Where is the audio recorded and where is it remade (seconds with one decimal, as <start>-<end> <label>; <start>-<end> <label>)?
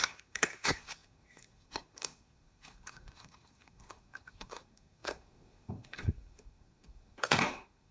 0.0-7.9 remade